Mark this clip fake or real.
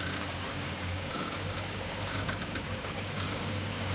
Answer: fake